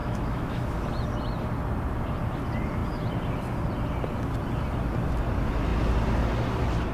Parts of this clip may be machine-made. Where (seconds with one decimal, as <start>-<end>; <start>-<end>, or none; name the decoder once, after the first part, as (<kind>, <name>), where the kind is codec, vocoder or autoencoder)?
0.0-0.8 (autoencoder, DAC-VAE)